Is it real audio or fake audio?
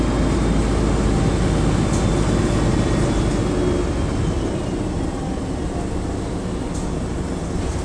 real